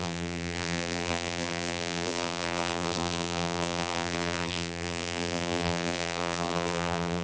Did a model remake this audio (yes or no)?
yes